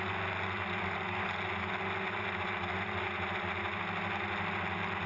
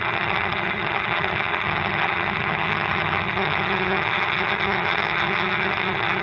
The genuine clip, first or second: first